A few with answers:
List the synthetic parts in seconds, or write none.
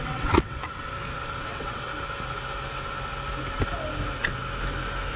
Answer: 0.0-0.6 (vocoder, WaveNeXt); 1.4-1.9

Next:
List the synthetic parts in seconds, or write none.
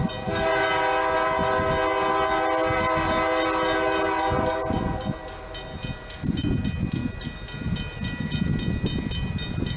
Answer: none